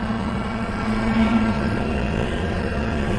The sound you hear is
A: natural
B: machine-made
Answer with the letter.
B